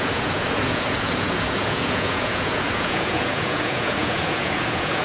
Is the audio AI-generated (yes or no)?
yes